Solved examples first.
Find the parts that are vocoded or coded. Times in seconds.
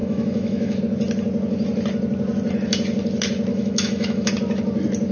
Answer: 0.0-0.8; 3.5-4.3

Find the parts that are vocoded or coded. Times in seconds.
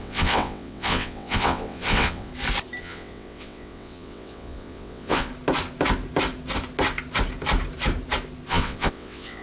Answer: 0.0-2.3; 2.8-5.3; 8.5-9.4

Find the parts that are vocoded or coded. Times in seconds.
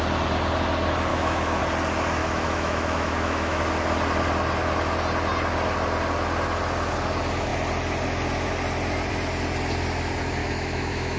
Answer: 1.1-1.6; 2.2-3.6; 10.4-11.2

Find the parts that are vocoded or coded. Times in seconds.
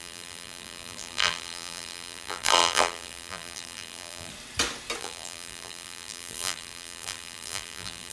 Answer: 0.0-4.3; 5.0-8.1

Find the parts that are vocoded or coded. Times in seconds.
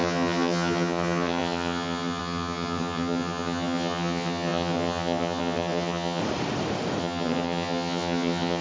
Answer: 0.0-6.2; 7.0-8.6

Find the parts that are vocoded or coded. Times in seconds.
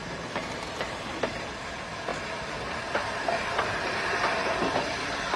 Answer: 0.0-1.2; 2.1-5.4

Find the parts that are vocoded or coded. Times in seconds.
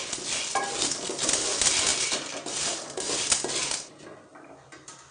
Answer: none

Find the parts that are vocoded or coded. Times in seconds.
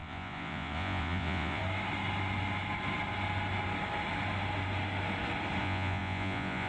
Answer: 0.0-1.6; 5.6-6.7